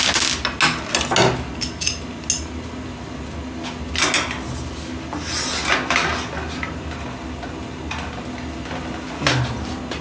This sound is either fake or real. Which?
real